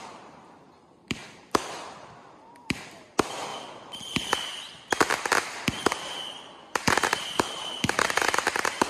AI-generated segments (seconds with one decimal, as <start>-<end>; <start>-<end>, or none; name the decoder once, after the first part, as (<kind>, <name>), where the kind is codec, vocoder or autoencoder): 0.0-3.5 (vocoder, BigVGAN v2); 6.9-8.9